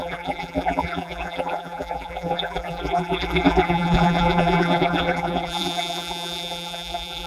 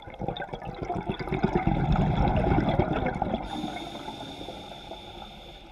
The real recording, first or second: second